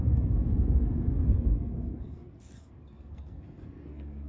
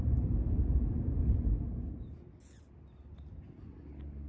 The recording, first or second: second